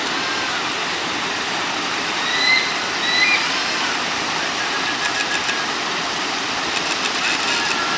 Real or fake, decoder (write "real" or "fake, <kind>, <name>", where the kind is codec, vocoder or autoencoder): real